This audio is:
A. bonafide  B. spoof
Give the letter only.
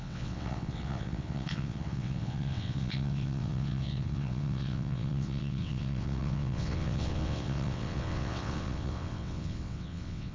B